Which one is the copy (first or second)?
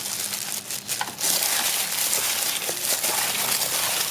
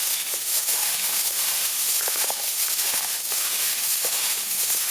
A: second